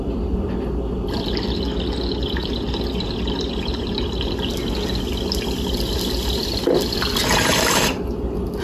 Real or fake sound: real